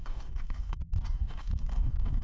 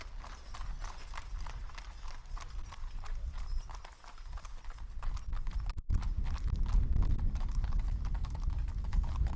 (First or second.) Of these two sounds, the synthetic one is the first